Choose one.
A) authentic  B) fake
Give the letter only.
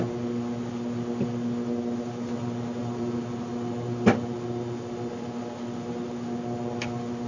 A